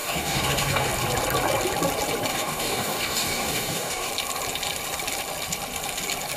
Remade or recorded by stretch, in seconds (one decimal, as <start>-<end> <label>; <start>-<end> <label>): 0.0-0.9 remade; 0.9-2.3 recorded; 2.3-4.1 remade; 4.1-6.4 recorded